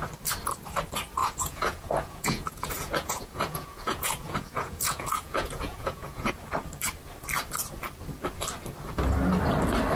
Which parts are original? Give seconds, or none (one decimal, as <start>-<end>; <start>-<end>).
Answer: 0.0-1.2; 6.3-10.0